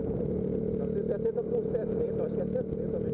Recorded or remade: recorded